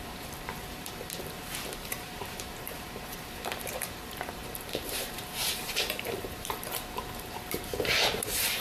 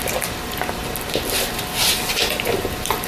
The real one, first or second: second